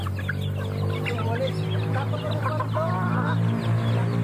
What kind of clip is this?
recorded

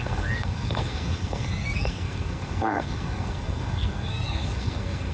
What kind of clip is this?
remade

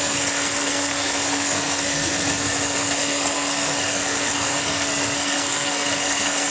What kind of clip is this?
remade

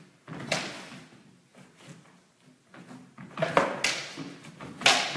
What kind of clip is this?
recorded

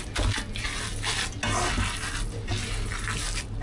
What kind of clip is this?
recorded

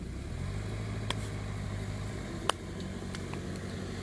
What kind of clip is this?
recorded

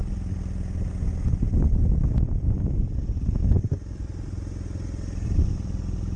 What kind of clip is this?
recorded